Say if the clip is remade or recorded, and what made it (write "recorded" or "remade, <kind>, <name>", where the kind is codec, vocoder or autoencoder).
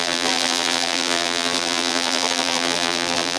remade, vocoder, BigVGAN v2